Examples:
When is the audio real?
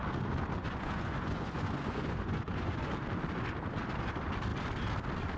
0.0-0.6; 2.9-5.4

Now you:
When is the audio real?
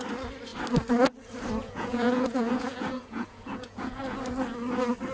0.0-1.6; 4.0-5.1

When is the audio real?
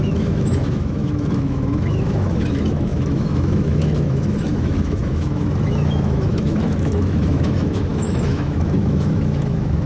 none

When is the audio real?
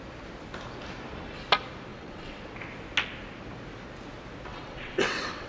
0.0-1.9; 2.4-4.5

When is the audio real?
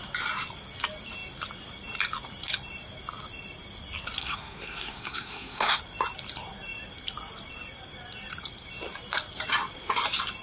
0.0-4.2; 5.8-10.4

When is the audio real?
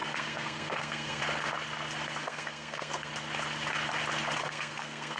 1.2-2.2; 3.1-4.4